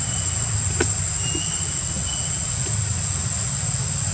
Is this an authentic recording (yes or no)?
yes